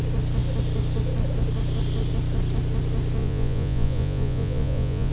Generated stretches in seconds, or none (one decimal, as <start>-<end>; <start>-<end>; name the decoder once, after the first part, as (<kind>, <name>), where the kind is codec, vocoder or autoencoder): 3.2-5.1 (vocoder, Vocos)